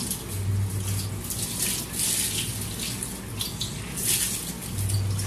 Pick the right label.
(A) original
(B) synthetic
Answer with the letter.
A